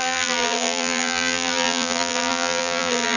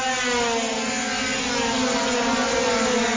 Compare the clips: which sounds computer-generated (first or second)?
first